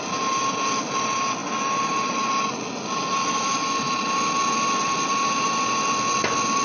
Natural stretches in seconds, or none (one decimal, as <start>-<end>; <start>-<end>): 0.0-6.6